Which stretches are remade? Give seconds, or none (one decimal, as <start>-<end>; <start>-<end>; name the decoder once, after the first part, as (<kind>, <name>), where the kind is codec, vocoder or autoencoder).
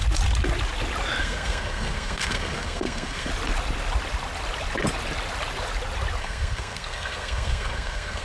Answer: 1.2-3.3 (codec, SNAC); 6.2-8.2